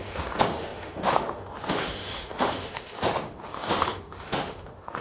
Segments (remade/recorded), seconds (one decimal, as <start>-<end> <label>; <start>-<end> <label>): 0.0-5.0 remade